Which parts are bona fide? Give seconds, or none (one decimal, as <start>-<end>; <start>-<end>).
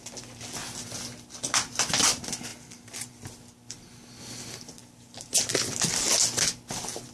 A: 0.0-4.8; 5.5-7.1